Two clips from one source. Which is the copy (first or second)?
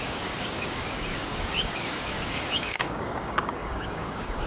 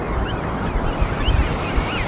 first